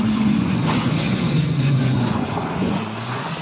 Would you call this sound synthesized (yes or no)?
yes